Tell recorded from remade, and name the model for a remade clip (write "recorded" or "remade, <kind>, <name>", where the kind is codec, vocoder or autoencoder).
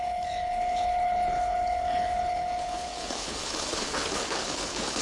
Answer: remade, codec, HILCodec